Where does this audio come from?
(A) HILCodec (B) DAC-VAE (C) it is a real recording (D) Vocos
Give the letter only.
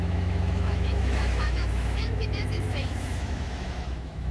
B